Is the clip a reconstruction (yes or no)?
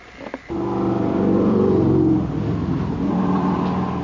no